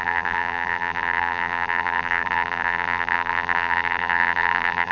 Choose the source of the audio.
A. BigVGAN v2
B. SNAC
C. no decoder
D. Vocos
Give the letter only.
A